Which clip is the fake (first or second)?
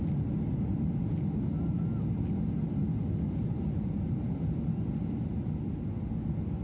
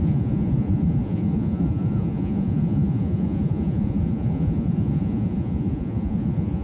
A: second